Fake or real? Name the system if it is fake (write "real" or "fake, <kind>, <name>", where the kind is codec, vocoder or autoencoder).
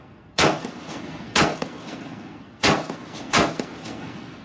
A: fake, codec, SNAC